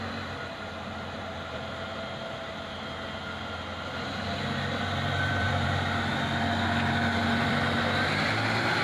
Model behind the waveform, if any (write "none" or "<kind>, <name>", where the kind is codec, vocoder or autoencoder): vocoder, BigVGAN v2